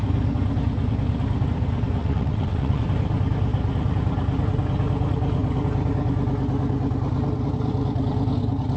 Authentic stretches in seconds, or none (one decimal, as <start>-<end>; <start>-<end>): 0.0-2.0; 2.8-8.8